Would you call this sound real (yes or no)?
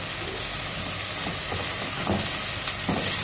yes